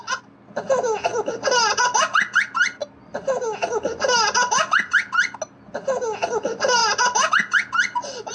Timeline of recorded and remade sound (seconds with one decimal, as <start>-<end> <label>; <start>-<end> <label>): 0.0-8.3 recorded